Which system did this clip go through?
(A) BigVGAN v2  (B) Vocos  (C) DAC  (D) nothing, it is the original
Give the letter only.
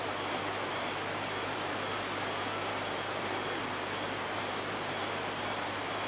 D